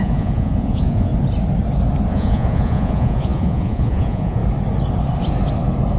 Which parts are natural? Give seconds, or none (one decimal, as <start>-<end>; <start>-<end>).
1.1-2.1; 4.4-6.0